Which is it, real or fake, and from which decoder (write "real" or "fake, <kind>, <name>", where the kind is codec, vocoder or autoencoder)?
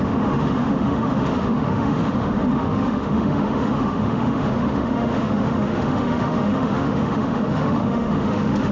fake, autoencoder, DAC-VAE